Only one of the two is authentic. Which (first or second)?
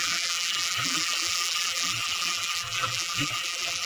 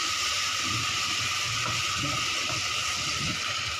second